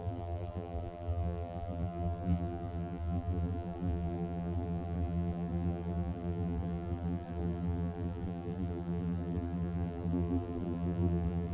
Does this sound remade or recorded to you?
remade